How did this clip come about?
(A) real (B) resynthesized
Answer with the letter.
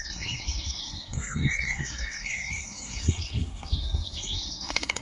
B